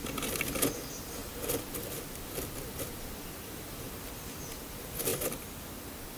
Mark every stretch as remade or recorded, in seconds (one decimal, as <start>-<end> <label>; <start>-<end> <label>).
0.0-6.2 recorded